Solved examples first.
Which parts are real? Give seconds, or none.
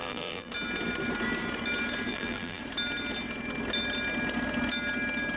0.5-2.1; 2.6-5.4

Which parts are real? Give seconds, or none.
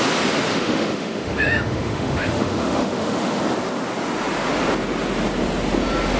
0.0-0.5; 3.4-6.2